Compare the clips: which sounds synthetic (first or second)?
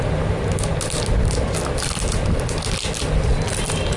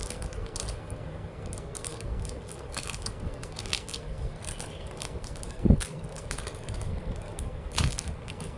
second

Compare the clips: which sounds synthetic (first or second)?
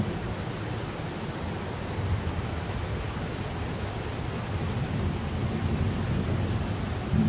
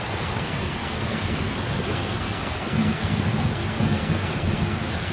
second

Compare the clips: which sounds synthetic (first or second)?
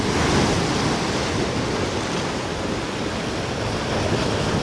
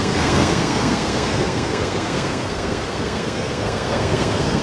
second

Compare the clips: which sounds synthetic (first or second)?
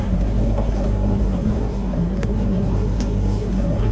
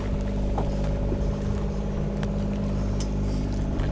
first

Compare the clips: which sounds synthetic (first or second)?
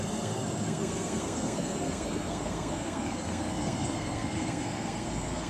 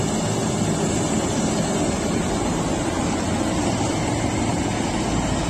first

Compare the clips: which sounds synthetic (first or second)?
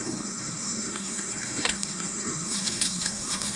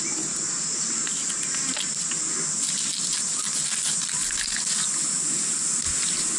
first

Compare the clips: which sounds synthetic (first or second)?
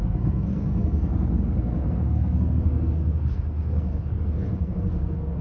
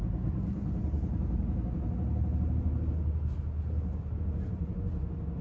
first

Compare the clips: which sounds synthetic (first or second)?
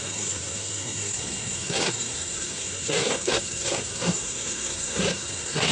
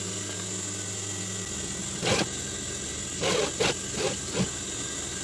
first